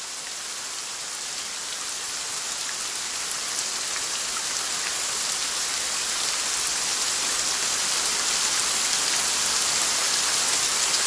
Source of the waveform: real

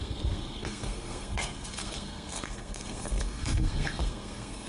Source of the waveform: fake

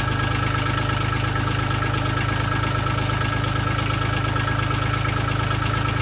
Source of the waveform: real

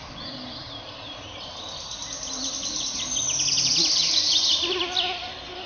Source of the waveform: real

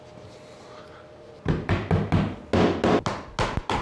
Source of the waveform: real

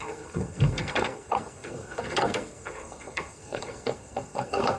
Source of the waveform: fake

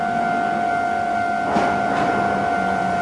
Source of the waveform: real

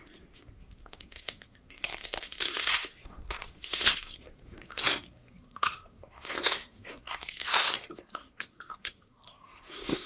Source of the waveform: fake